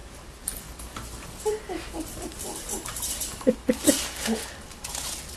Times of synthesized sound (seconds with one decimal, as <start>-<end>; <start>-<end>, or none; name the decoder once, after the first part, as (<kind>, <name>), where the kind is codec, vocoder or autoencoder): none